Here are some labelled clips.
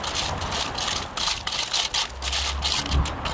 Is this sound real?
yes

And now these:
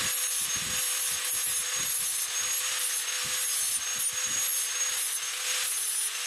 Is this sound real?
yes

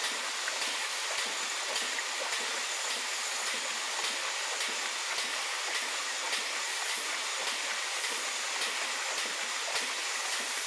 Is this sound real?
yes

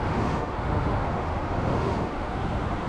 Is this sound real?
no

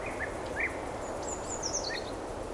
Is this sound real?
yes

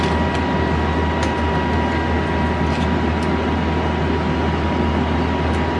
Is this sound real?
yes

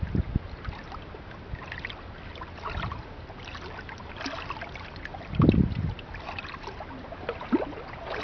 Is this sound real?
yes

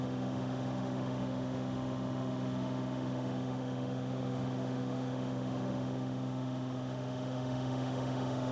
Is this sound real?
no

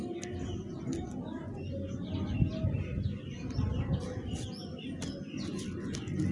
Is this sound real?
yes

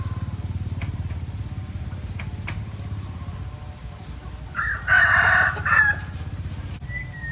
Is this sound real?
yes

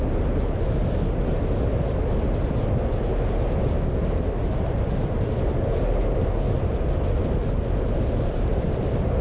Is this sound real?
yes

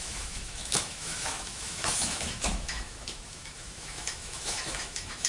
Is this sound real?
no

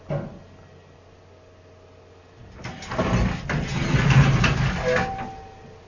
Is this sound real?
yes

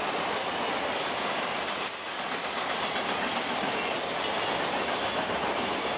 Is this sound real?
yes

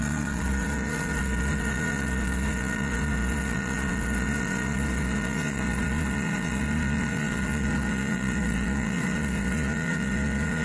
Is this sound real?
no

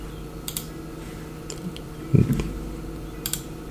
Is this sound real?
yes